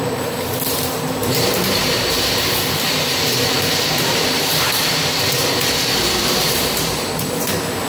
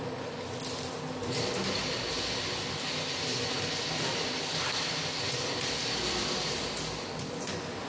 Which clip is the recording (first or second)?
second